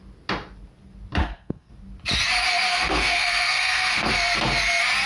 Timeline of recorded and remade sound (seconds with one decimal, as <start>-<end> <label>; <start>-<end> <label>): 0.0-1.2 recorded; 1.2-1.7 remade; 1.7-2.7 recorded; 2.7-4.1 remade; 4.1-5.1 recorded